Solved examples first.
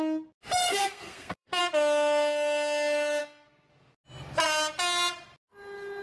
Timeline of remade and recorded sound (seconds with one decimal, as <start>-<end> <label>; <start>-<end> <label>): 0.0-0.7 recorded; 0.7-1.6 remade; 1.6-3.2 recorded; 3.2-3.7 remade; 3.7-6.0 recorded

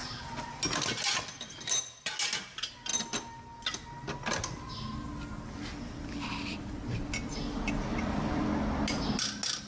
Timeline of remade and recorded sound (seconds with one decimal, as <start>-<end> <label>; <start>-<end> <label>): 0.0-9.7 recorded

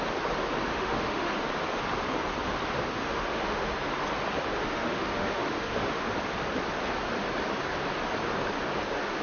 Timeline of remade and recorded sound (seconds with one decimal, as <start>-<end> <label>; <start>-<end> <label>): 0.0-0.7 recorded; 0.7-1.3 remade; 1.3-3.0 recorded; 3.0-3.7 remade; 3.7-4.6 recorded; 4.6-6.0 remade; 6.0-9.2 recorded

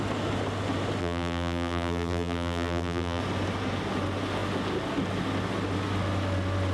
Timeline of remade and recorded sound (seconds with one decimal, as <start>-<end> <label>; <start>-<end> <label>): 0.0-1.0 recorded; 1.0-3.2 remade; 3.2-6.7 recorded